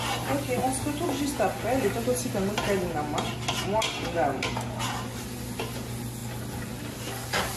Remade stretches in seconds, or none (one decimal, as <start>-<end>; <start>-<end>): none